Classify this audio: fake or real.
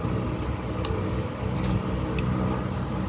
real